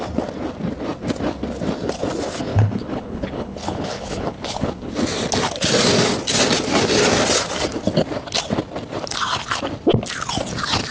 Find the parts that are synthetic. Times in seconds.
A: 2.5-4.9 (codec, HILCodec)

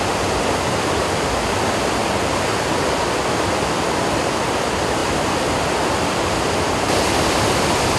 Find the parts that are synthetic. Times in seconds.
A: none